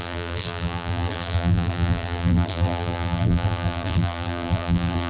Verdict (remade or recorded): remade